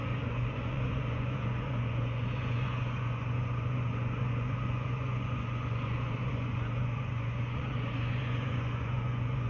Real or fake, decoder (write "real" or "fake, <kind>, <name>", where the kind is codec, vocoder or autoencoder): fake, vocoder, Vocos